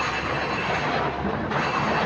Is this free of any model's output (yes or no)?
yes